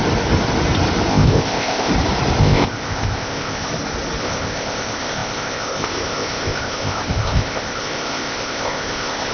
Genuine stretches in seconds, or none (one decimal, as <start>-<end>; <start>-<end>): 0.0-1.1; 1.9-2.4; 3.7-4.2